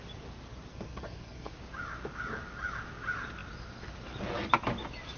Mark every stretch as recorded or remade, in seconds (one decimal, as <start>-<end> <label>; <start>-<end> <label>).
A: 0.0-0.7 recorded; 0.7-1.5 remade; 1.5-5.2 recorded